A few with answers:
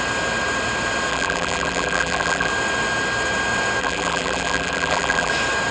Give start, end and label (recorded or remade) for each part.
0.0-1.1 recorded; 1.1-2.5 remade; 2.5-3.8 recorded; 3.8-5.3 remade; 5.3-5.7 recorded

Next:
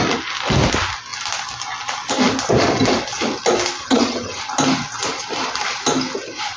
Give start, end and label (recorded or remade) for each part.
0.0-3.8 recorded; 3.8-4.4 remade; 4.4-6.6 recorded

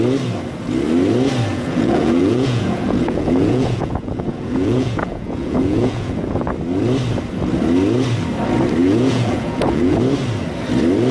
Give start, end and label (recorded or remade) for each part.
0.0-1.5 recorded; 1.5-6.5 remade; 6.5-8.8 recorded; 8.8-10.0 remade; 10.0-11.1 recorded

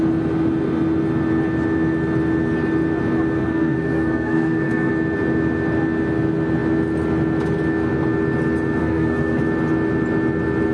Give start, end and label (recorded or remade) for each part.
0.0-3.4 recorded; 3.4-4.9 remade; 4.9-8.8 recorded; 8.8-9.4 remade; 9.4-10.7 recorded

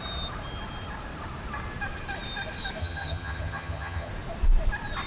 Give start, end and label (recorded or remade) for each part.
0.0-2.8 recorded; 2.8-4.1 remade; 4.1-5.1 recorded